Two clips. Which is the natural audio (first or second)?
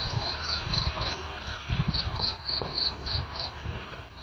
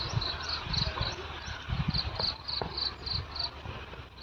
second